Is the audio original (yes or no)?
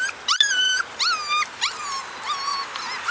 yes